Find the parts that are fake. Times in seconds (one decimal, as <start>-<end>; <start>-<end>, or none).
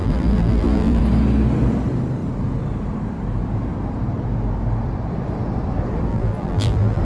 0.0-1.0; 6.1-7.0